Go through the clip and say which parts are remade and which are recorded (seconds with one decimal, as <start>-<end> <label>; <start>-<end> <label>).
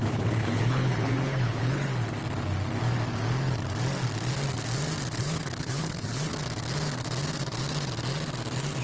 0.0-1.9 remade; 1.9-5.2 recorded; 5.2-6.3 remade; 6.3-8.8 recorded